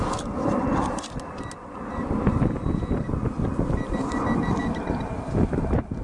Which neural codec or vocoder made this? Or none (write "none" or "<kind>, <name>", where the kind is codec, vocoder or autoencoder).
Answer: none